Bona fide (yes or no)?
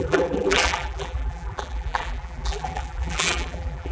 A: no